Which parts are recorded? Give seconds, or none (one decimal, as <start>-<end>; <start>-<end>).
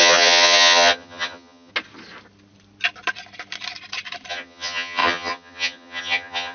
1.7-4.3